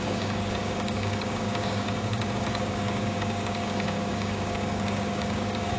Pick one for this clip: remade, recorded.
remade